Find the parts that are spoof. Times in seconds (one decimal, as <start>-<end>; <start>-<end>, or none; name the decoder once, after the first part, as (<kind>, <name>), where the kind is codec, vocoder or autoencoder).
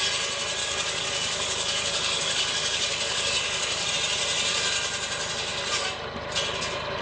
0.6-3.9 (codec, DAC)